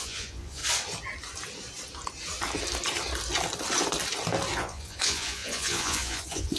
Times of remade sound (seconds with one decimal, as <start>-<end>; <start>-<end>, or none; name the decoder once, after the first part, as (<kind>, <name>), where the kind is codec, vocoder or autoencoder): 0.0-0.6 (vocoder, Vocos); 4.6-6.6